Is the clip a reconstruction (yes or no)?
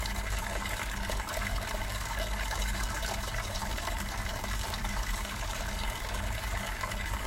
yes